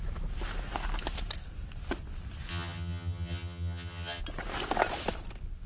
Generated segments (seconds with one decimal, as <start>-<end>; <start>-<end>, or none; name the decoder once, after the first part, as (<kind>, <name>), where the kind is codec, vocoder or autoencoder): 2.5-4.2 (vocoder, HiFi-GAN)